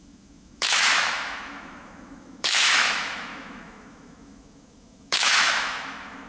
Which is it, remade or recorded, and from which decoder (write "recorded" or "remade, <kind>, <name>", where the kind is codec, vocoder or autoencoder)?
remade, autoencoder, DAC-VAE